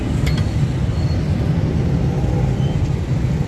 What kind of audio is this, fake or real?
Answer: real